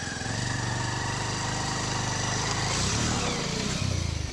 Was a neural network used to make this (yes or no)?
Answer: yes